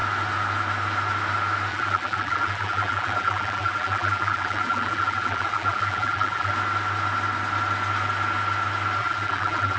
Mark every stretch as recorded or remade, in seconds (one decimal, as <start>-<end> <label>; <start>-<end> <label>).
0.0-1.7 recorded; 1.7-6.5 remade; 6.5-9.0 recorded; 9.0-9.8 remade